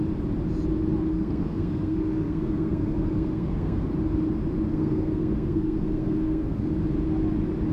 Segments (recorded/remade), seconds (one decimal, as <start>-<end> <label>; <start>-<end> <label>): 0.0-1.1 recorded; 1.1-3.9 remade; 3.9-4.7 recorded; 4.7-6.7 remade; 6.7-7.7 recorded